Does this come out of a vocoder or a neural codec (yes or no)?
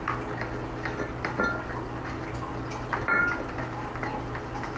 no